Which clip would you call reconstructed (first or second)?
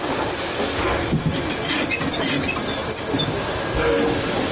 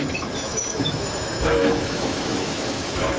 second